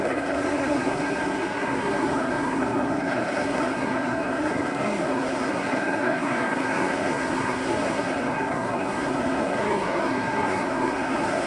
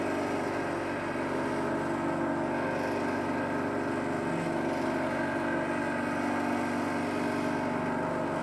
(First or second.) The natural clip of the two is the second